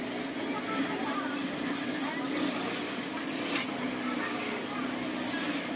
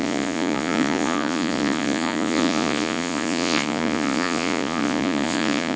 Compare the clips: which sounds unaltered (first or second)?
first